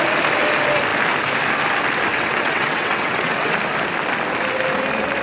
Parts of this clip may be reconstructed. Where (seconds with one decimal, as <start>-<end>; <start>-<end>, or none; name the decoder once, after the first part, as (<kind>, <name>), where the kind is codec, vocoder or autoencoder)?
2.1-3.5 (vocoder, WaveNeXt)